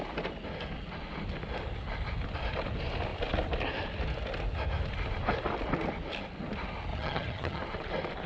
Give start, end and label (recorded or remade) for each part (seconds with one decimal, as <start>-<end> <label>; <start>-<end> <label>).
0.0-6.9 recorded; 6.9-7.6 remade; 7.6-8.3 recorded